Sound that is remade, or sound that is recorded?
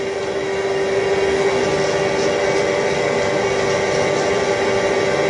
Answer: recorded